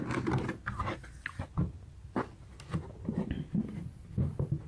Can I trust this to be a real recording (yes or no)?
yes